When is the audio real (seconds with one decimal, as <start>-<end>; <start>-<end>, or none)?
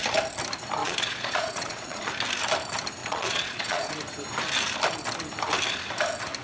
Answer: 0.0-0.8; 2.1-3.0; 3.9-6.4